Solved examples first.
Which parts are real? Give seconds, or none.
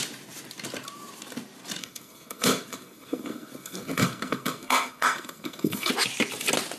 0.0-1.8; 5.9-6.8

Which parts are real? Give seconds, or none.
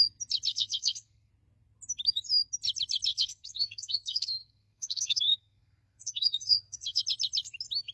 0.0-0.5; 1.3-3.1; 7.0-7.9